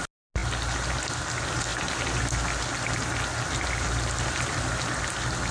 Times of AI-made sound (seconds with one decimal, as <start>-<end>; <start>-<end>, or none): none